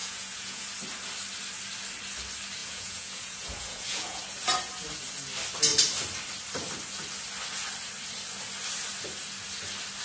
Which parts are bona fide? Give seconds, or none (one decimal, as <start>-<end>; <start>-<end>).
0.6-2.6; 4.2-10.0